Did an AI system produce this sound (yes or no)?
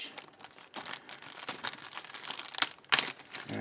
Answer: no